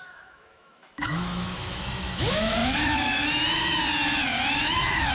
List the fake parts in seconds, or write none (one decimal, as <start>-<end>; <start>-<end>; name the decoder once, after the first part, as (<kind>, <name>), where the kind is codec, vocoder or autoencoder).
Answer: 0.0-3.8 (autoencoder, DAC-VAE); 4.5-5.1